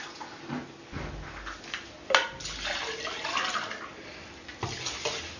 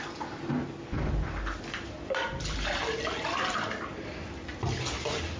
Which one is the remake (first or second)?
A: second